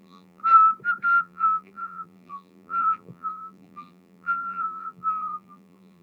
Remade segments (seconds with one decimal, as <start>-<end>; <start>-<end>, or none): 0.0-0.4; 1.2-6.0

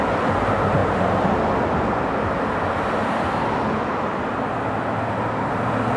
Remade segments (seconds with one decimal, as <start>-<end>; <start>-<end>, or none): none